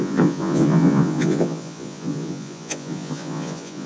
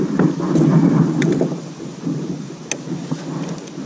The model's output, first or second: first